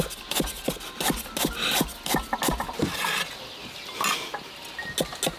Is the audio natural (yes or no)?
yes